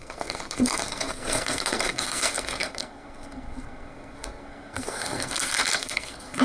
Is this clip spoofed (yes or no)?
yes